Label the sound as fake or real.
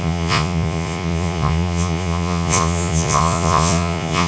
fake